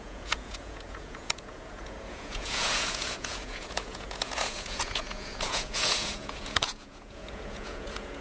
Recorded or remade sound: remade